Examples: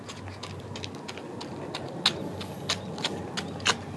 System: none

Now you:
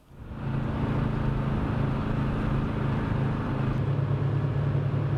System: none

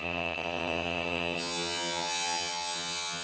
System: vocoder, HiFi-GAN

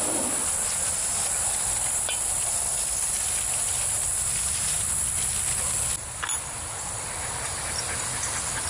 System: none